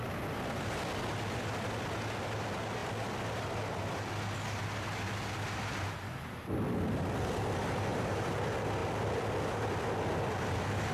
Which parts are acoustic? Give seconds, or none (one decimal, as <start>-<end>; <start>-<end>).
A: 0.0-7.9; 8.4-10.9